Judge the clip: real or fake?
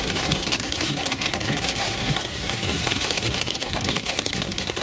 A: fake